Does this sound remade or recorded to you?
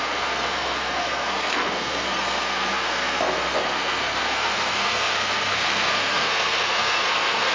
remade